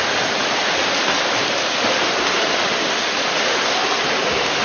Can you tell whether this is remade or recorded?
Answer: recorded